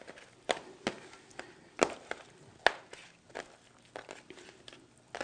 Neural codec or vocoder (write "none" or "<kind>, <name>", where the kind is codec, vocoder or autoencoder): none